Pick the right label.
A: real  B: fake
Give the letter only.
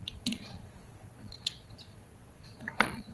B